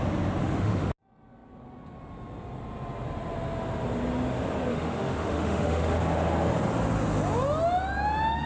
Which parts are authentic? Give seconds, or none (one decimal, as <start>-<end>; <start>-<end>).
0.0-0.4; 0.9-4.7; 6.0-8.5